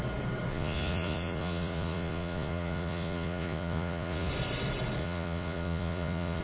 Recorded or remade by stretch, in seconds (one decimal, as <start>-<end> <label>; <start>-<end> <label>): 0.0-0.5 recorded; 0.5-4.3 remade; 4.3-5.0 recorded; 5.0-6.4 remade